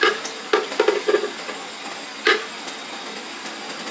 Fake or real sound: real